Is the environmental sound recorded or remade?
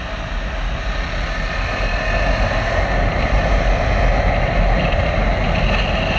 recorded